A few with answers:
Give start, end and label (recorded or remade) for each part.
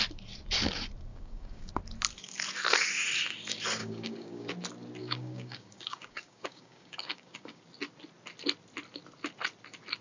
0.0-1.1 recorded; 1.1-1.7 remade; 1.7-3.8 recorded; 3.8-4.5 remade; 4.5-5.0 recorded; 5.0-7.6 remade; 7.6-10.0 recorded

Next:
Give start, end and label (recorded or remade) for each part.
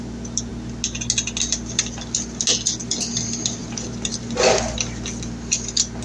0.0-6.0 recorded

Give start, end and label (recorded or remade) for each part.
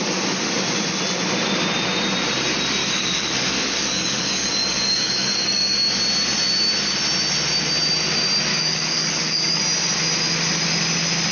0.0-2.8 recorded; 2.8-6.0 remade; 6.0-8.5 recorded; 8.5-9.6 remade; 9.6-11.3 recorded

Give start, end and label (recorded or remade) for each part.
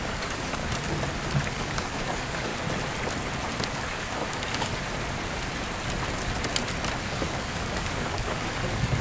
0.0-0.6 remade; 0.6-1.4 recorded; 1.4-2.5 remade; 2.5-3.7 recorded; 3.7-4.7 remade; 4.7-7.0 recorded; 7.0-9.0 remade